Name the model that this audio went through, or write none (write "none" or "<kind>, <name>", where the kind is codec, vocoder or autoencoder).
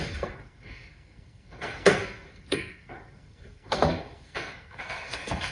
codec, SNAC